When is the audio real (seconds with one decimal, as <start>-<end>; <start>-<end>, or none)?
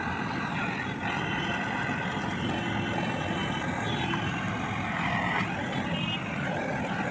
0.0-7.1